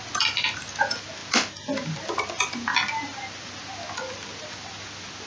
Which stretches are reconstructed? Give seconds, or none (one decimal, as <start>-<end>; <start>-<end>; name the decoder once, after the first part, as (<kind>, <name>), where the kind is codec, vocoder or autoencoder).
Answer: none